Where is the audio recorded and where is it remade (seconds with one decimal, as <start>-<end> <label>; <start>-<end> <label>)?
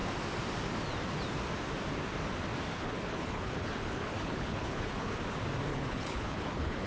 0.0-2.7 recorded; 2.7-5.2 remade; 5.2-5.7 recorded; 5.7-6.9 remade